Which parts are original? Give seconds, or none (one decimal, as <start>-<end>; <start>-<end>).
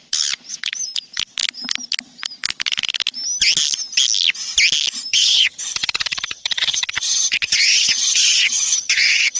0.0-5.1